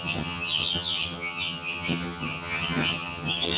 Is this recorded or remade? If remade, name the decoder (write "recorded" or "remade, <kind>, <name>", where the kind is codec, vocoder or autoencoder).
remade, vocoder, HiFi-GAN